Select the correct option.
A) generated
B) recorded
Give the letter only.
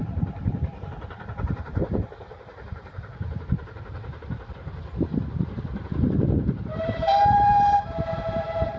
A